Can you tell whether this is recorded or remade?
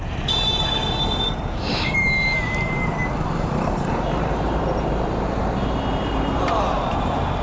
remade